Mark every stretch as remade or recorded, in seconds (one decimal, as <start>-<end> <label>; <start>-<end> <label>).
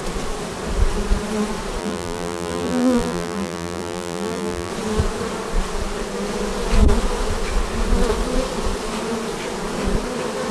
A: 0.0-1.8 recorded; 1.8-4.7 remade; 4.7-10.5 recorded